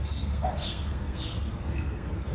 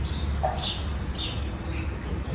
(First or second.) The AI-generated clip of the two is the first